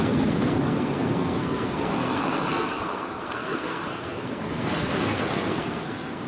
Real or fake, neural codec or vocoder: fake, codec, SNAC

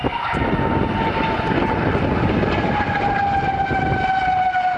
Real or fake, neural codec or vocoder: real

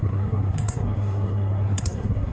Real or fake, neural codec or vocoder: fake, codec, SNAC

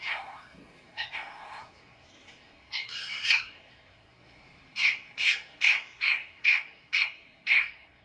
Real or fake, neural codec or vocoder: fake, codec, SNAC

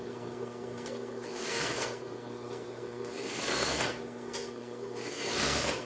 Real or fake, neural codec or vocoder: fake, codec, SNAC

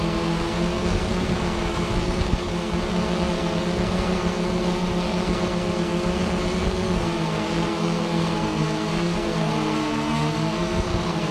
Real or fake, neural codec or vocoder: fake, codec, SNAC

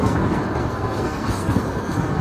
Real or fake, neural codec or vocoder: fake, codec, SNAC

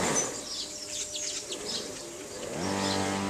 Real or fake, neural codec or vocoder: real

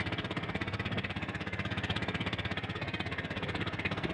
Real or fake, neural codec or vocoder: fake, codec, SNAC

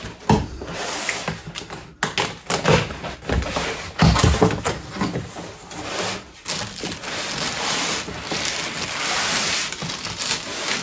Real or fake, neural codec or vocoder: real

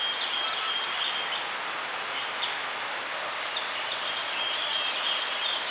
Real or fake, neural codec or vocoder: real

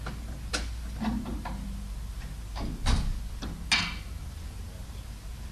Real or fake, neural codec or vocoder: real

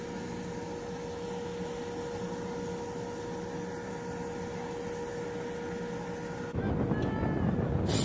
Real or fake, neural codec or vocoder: real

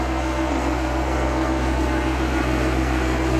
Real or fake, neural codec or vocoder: fake, codec, SNAC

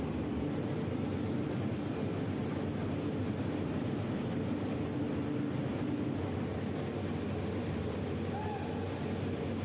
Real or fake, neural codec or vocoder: real